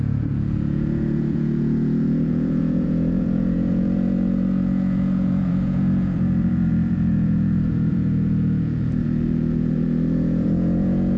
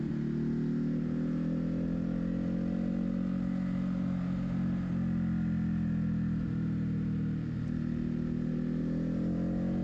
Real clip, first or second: second